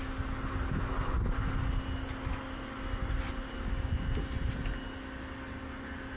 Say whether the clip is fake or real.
real